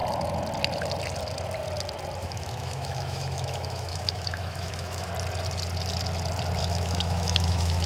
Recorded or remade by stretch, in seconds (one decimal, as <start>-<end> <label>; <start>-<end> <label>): 0.0-2.2 recorded; 2.2-5.1 remade; 5.1-6.6 recorded; 6.6-7.9 remade